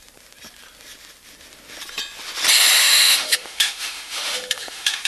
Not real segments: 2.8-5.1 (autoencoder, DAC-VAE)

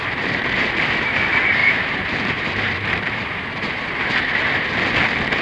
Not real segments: 1.6-4.1 (vocoder, BigVGAN v2)

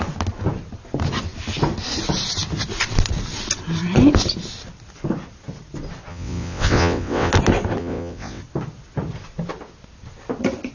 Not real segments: 6.1-7.3 (vocoder, WaveNeXt); 7.8-8.4

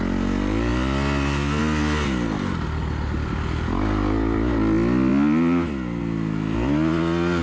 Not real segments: none